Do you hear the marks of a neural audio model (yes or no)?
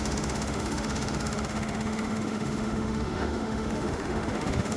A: yes